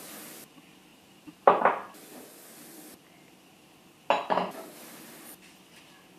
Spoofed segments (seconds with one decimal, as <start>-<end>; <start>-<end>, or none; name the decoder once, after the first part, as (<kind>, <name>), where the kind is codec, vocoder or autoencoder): 0.9-1.6 (vocoder, BigVGAN v2)

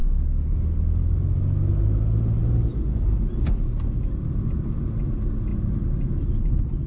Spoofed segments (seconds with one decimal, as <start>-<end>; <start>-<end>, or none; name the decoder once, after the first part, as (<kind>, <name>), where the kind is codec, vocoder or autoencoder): none

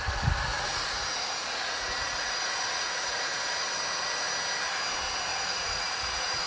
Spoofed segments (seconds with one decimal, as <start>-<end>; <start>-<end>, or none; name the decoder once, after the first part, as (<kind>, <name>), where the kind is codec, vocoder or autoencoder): 0.5-4.3 (vocoder, Vocos); 5.3-6.5

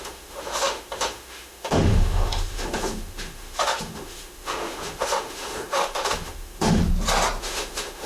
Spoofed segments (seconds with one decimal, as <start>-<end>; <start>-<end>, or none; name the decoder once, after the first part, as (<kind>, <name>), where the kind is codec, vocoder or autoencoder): 0.0-6.8 (autoencoder, DAC-VAE); 7.4-8.1

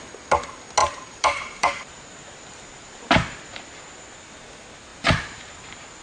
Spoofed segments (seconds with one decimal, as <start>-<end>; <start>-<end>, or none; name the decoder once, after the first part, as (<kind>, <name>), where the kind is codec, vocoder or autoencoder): 0.8-3.1 (vocoder, BigVGAN v2); 4.9-5.5

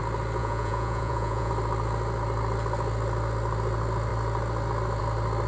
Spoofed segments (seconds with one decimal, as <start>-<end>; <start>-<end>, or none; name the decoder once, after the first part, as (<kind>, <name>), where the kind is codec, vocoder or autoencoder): 0.4-1.5 (vocoder, Vocos)

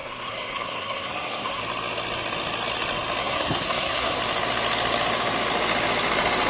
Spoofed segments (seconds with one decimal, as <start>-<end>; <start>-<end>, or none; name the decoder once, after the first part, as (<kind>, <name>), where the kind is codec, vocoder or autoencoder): 0.0-1.6 (codec, SNAC); 3.2-4.2